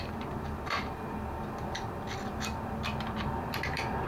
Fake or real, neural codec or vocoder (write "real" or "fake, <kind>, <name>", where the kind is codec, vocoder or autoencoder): fake, vocoder, BigVGAN v2